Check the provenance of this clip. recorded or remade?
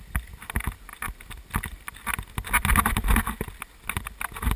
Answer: recorded